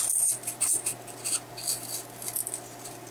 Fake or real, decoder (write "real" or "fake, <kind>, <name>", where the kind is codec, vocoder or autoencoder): real